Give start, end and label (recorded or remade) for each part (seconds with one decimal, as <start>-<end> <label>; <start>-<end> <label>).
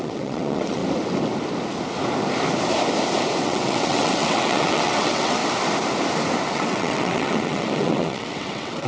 0.0-0.8 remade; 0.8-3.4 recorded; 3.4-5.4 remade; 5.4-6.5 recorded; 6.5-8.9 remade